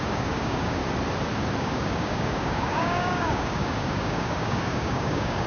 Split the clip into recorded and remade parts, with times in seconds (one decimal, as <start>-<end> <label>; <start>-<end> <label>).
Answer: 0.0-0.8 remade; 0.8-1.6 recorded; 1.6-5.5 remade